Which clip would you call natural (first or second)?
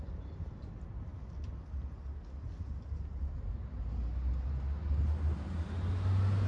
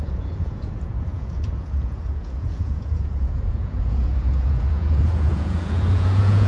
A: first